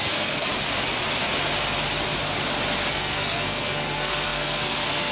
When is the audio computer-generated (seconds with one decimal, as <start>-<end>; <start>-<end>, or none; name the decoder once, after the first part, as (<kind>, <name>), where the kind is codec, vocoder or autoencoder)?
0.0-0.5 (codec, SNAC); 2.9-5.1